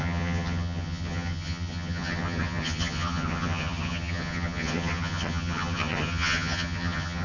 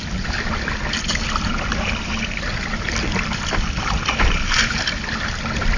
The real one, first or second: second